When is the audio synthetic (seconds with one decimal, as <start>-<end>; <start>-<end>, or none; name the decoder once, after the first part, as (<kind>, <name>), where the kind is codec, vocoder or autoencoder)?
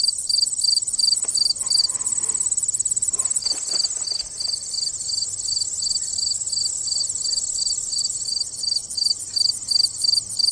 none